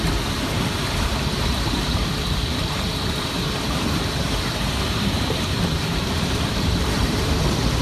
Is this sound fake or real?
fake